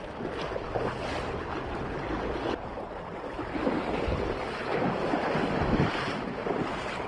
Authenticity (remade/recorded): recorded